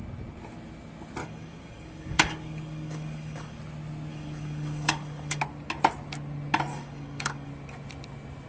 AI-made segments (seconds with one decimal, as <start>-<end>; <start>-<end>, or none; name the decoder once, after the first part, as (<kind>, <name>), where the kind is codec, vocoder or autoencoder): 1.2-3.6 (codec, DAC); 4.1-5.4; 6.7-7.5